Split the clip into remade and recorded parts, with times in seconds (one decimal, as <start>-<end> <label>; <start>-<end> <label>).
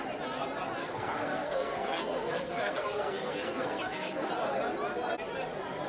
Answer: 0.0-0.8 recorded; 0.8-4.3 remade; 4.3-5.9 recorded